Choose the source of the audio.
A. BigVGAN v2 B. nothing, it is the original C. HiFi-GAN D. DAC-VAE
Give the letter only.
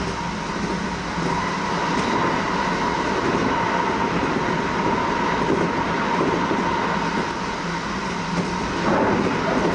B